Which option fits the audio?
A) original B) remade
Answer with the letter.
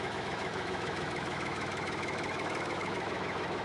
B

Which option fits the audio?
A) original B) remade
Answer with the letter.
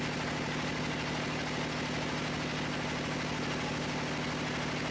A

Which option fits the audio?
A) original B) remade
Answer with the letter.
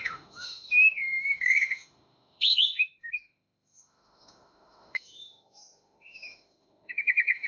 B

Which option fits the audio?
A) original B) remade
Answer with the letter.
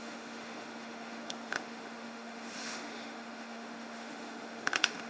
B